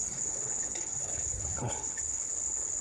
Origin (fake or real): fake